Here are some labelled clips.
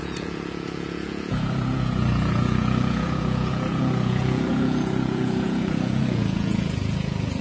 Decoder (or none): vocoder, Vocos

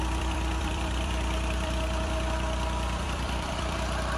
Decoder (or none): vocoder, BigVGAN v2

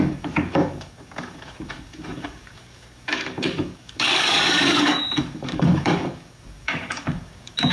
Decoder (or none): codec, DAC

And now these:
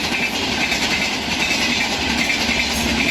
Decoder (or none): none